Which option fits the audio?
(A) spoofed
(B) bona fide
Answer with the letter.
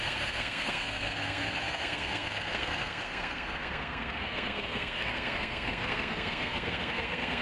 A